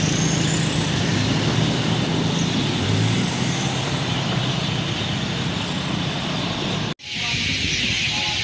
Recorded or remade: recorded